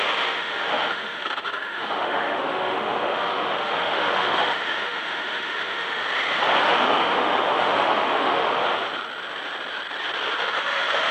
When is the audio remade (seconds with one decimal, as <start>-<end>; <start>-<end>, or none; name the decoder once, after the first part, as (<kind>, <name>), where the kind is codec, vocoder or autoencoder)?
0.0-6.0 (autoencoder, DAC-VAE); 6.6-8.6; 10.4-11.1